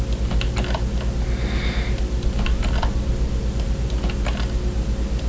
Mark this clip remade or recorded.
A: recorded